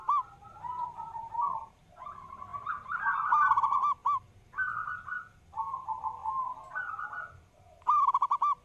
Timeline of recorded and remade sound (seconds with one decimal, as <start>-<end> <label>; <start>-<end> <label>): 0.0-8.6 recorded